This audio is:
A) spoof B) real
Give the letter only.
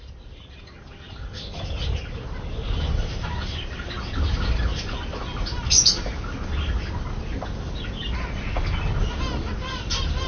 B